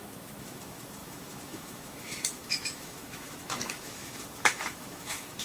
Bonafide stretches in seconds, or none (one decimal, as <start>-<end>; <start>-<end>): none